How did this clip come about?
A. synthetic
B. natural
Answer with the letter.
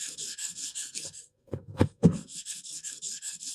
A